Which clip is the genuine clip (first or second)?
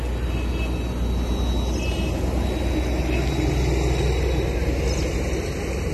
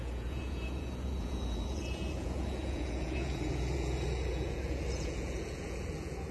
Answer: first